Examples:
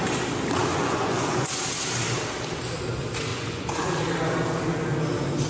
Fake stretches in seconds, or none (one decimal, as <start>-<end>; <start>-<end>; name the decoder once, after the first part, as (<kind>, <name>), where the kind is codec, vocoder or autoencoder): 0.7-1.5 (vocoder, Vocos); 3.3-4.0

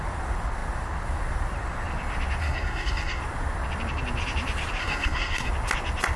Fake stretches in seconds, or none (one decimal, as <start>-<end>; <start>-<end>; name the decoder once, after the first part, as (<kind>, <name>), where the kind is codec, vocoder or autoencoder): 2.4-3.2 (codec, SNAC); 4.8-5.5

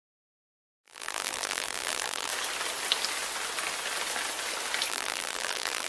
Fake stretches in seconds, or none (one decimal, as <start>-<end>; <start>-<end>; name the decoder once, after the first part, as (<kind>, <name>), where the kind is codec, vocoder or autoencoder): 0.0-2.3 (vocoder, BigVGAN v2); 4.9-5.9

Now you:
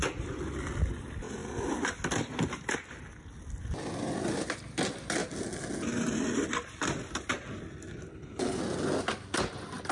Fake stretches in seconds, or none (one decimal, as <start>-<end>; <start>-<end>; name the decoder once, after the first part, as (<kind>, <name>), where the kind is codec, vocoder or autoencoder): 8.1-8.6 (codec, HILCodec)

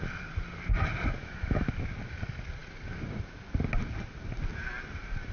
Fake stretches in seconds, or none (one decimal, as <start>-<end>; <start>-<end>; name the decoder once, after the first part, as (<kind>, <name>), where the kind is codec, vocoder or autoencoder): 1.2-1.7 (autoencoder, DAC-VAE)

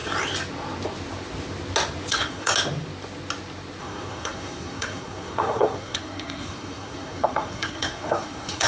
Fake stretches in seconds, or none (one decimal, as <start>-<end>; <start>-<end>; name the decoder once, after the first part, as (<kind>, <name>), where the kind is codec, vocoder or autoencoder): 2.1-2.5 (codec, SNAC); 3.8-8.7

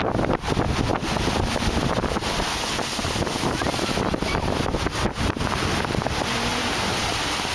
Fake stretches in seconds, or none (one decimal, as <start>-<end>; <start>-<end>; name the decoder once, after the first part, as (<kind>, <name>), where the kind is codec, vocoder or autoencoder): 0.9-5.4 (vocoder, BigVGAN v2); 6.5-7.5